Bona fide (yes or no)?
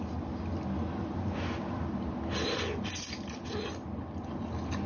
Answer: yes